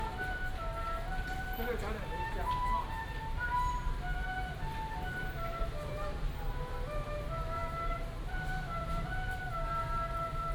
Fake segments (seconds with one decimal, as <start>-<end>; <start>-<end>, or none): 0.0-10.5